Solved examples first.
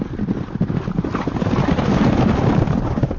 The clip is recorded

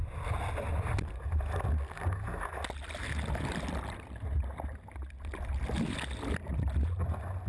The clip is recorded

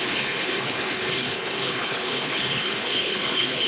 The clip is remade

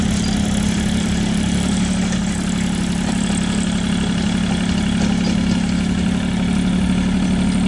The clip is recorded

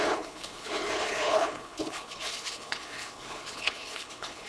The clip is remade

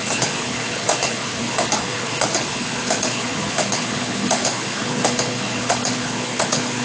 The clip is remade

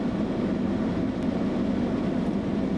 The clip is recorded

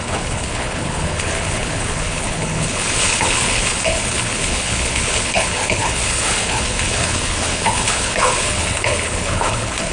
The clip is remade